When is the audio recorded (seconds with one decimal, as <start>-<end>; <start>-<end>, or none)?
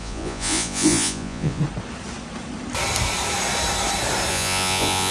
1.6-4.3